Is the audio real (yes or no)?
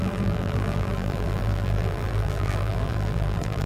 no